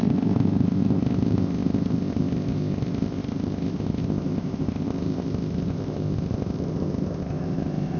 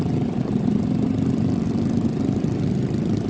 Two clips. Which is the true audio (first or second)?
second